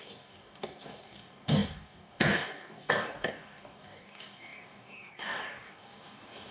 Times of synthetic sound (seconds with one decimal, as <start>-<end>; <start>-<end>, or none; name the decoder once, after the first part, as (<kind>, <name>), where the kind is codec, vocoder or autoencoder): 0.0-6.5 (codec, DAC)